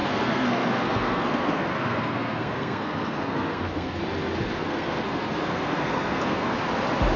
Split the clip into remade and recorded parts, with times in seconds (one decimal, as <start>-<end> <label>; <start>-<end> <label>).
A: 0.0-4.0 remade; 4.0-4.5 recorded; 4.5-6.5 remade; 6.5-7.2 recorded